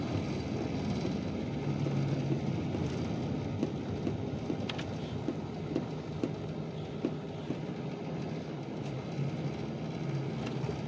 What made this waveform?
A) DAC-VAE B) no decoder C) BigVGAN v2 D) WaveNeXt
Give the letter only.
B